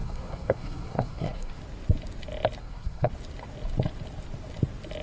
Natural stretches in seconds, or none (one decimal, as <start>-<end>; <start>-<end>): 1.6-2.6; 3.1-5.0